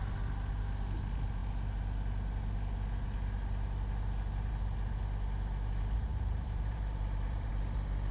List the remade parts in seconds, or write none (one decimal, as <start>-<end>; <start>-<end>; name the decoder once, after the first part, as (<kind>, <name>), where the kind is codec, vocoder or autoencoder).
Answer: 6.1-7.5 (vocoder, BigVGAN v2)